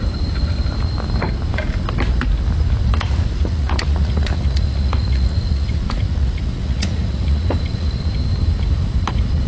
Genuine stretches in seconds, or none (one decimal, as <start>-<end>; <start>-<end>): 0.0-2.9; 8.0-9.5